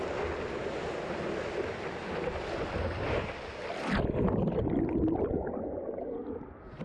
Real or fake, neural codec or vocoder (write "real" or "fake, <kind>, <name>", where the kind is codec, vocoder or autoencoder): real